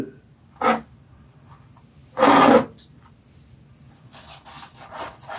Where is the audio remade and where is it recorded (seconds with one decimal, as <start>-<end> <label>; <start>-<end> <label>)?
0.0-5.4 recorded